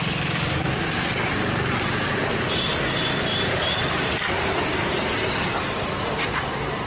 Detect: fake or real fake